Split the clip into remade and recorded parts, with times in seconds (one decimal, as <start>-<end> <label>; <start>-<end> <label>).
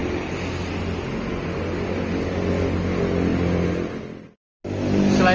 0.0-5.3 recorded